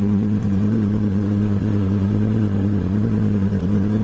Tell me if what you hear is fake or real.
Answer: fake